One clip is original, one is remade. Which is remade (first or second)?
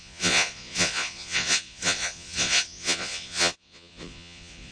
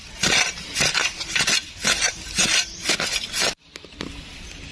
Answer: first